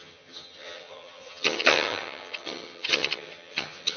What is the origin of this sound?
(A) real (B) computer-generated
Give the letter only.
B